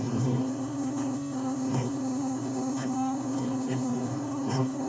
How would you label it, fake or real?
fake